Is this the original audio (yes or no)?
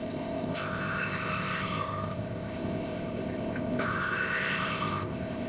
no